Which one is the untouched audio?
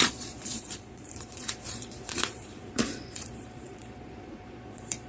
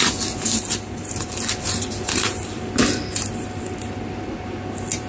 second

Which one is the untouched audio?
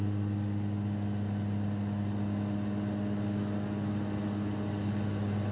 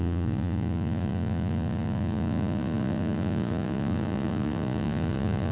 first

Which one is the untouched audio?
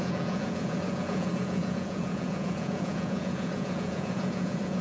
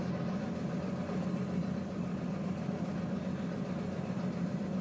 second